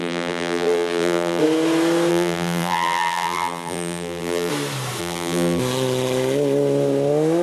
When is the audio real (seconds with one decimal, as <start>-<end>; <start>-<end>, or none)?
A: 1.4-2.1; 4.5-5.0; 5.6-7.4